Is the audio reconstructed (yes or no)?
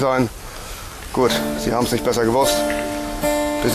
no